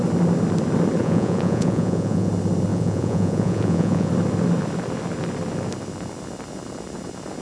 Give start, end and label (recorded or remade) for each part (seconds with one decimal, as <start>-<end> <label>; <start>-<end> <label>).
0.0-1.0 recorded; 1.0-2.3 remade; 2.3-2.7 recorded; 2.7-4.1 remade; 4.1-7.4 recorded